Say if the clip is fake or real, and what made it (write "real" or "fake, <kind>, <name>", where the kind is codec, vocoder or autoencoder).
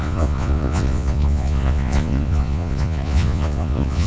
fake, vocoder, Vocos